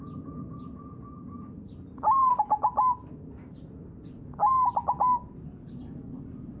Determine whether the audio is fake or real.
real